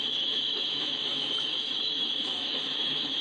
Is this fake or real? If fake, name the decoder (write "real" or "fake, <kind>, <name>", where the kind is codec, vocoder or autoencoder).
fake, autoencoder, DAC-VAE